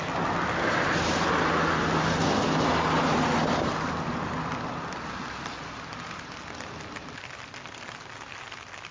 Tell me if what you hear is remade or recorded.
recorded